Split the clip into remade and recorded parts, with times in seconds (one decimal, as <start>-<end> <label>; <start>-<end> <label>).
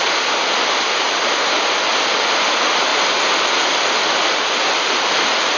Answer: 0.0-5.6 recorded